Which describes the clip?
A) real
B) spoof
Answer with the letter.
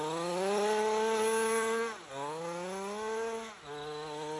A